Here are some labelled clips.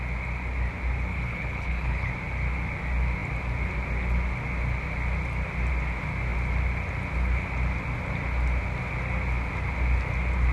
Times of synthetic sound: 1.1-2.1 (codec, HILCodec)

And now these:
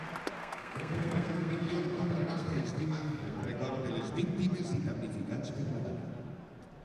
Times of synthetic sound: 0.4-3.4 (codec, SNAC)

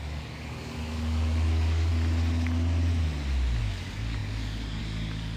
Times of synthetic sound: 0.0-1.9 (codec, DAC); 3.6-5.4

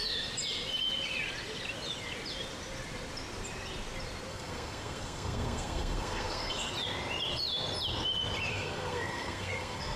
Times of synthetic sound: 4.3-6.7 (codec, SNAC); 8.5-10.0

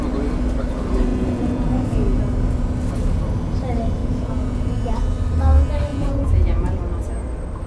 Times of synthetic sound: 1.1-2.2 (vocoder, Vocos); 4.0-4.7; 5.9-6.8

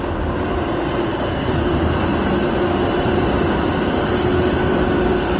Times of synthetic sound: 1.1-1.6 (codec, SNAC)

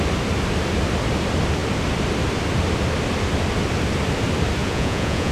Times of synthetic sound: 4.6-5.3 (vocoder, Vocos)